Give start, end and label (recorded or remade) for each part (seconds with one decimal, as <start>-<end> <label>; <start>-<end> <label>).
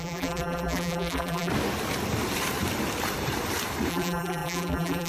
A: 0.0-1.5 remade; 1.5-3.9 recorded; 3.9-5.1 remade